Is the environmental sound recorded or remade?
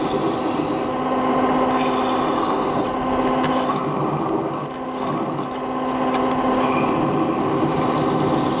recorded